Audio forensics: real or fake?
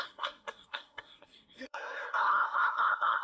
fake